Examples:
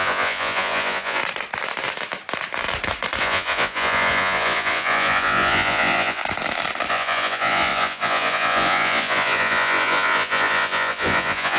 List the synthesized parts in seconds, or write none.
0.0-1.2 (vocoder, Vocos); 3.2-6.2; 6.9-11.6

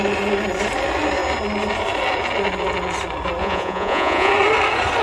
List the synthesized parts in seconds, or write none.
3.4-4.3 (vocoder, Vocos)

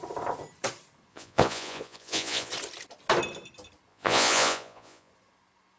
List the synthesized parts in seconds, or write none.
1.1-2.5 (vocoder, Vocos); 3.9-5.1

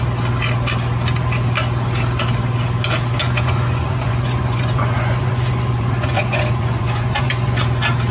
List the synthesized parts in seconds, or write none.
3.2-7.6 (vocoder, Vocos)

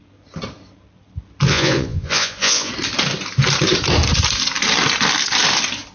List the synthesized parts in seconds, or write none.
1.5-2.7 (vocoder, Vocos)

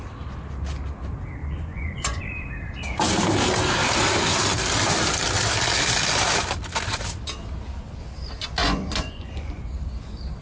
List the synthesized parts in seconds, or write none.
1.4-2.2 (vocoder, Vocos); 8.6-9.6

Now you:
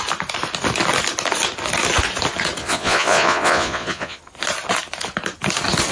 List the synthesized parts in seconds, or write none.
2.6-4.2 (vocoder, Vocos)

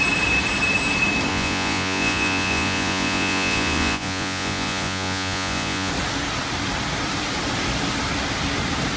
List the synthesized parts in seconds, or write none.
1.3-5.9 (vocoder, Vocos)